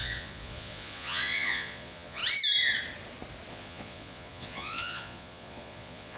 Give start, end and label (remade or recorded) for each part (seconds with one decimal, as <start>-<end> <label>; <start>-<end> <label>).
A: 0.0-2.2 remade; 2.2-3.5 recorded; 3.5-6.2 remade